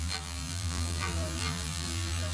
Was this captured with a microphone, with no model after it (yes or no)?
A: no